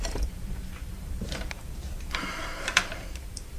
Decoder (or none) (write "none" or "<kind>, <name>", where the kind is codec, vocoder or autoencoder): vocoder, BigVGAN v2